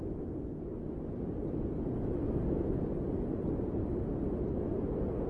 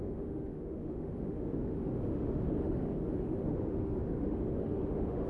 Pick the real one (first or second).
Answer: first